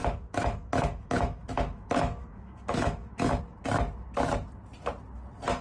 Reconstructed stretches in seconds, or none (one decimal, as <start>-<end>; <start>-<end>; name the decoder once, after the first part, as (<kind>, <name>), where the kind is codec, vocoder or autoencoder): 0.0-3.4 (autoencoder, DAC-VAE)